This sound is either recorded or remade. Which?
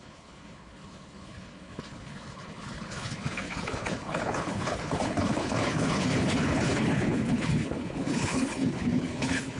remade